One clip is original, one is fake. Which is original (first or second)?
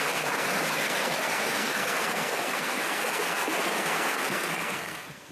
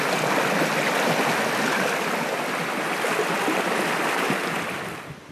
second